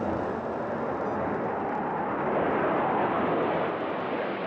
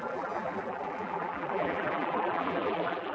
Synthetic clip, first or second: second